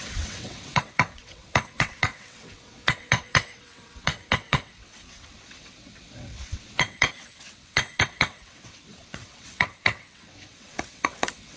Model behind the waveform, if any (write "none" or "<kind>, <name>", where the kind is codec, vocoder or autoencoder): vocoder, WaveNeXt